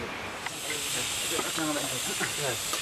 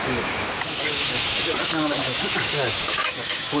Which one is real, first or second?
first